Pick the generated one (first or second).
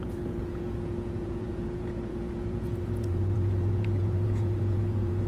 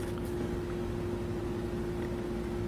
first